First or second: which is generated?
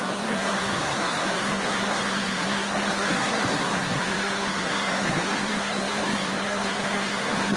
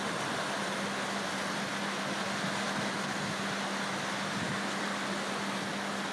first